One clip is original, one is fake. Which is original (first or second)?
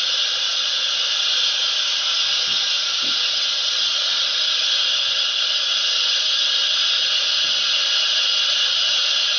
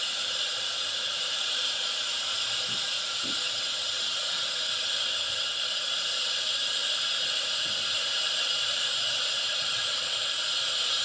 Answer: first